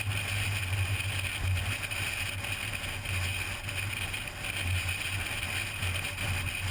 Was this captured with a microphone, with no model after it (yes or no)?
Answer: yes